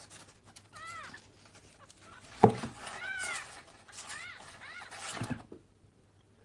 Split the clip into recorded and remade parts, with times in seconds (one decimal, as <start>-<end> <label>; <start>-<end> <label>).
0.0-2.1 recorded; 2.1-5.4 remade; 5.4-6.4 recorded

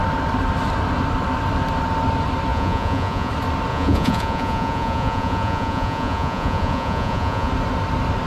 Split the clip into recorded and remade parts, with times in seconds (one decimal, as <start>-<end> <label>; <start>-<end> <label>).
0.0-2.5 recorded; 2.5-3.3 remade; 3.3-3.7 recorded; 3.7-7.5 remade; 7.5-8.3 recorded